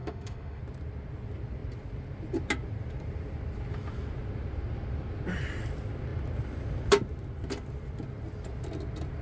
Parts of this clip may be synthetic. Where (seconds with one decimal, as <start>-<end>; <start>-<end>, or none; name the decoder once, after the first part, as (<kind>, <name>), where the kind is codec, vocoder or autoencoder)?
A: 0.0-0.6 (autoencoder, DAC-VAE)

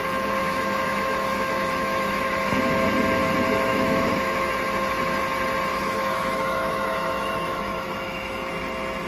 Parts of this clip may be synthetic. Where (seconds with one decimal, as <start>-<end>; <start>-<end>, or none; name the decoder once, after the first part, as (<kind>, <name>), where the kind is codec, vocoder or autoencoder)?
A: 0.4-2.5 (autoencoder, DAC-VAE); 3.7-4.5; 5.7-8.5